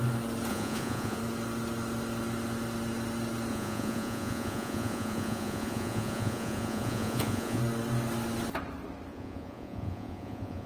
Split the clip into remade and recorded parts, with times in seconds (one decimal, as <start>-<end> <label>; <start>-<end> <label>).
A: 0.0-0.5 recorded; 0.5-1.2 remade; 1.2-3.5 recorded; 3.5-7.6 remade; 7.6-9.1 recorded; 9.1-10.7 remade